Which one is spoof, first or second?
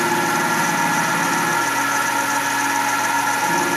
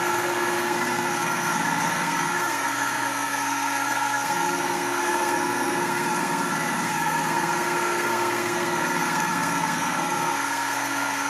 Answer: second